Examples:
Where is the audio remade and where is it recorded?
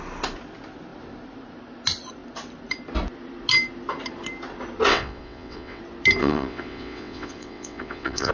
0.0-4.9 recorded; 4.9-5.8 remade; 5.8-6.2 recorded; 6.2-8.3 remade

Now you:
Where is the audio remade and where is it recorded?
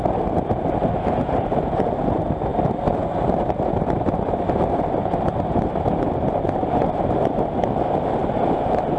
0.0-6.6 recorded; 6.6-7.1 remade; 7.1-8.2 recorded; 8.2-9.0 remade